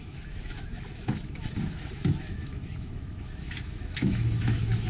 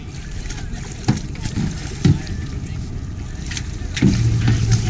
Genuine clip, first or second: second